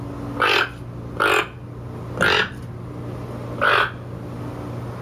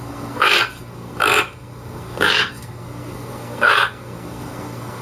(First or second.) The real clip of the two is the first